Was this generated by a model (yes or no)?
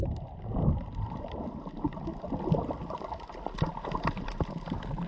no